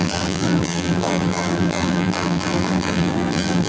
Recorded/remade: remade